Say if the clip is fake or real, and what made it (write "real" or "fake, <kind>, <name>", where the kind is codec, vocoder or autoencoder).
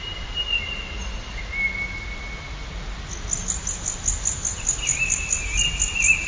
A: real